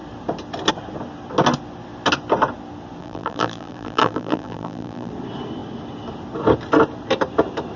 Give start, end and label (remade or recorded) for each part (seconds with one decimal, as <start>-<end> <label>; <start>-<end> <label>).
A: 0.0-3.0 recorded; 3.0-5.1 remade; 5.1-7.8 recorded